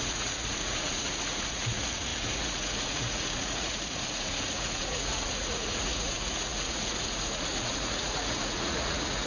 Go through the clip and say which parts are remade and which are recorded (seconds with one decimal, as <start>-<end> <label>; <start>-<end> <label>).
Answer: 0.0-9.3 remade